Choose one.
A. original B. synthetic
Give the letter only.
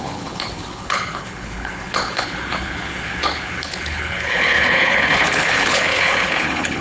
B